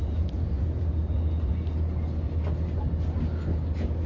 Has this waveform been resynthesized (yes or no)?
no